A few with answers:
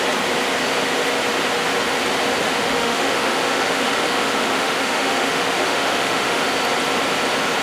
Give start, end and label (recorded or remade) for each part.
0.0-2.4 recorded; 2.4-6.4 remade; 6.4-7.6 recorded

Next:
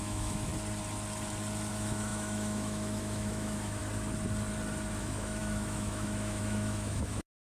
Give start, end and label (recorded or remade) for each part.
0.0-0.5 remade; 0.5-1.7 recorded; 1.7-3.8 remade; 3.8-5.0 recorded; 5.0-7.4 remade

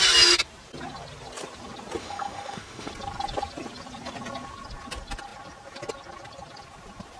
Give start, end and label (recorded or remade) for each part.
0.0-2.0 recorded; 2.0-2.9 remade; 2.9-7.2 recorded

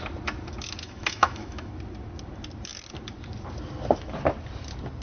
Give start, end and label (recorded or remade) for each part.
0.0-0.8 recorded; 0.8-1.7 remade; 1.7-5.0 recorded

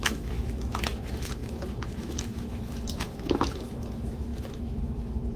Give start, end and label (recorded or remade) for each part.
0.0-5.4 remade

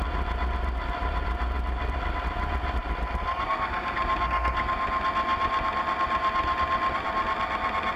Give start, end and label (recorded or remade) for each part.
0.0-8.0 recorded